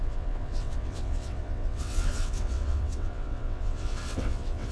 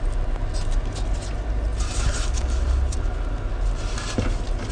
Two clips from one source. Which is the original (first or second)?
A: second